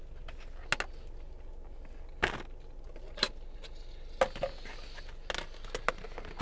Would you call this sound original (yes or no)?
yes